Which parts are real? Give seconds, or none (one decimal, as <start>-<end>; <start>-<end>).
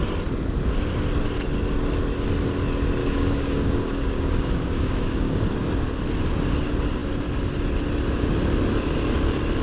0.0-3.0; 5.5-9.6